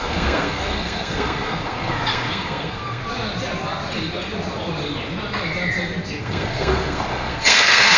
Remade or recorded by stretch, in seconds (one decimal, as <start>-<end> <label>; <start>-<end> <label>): 0.0-3.0 remade; 3.0-6.2 recorded; 6.2-8.0 remade